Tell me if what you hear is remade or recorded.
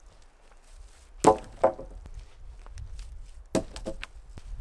recorded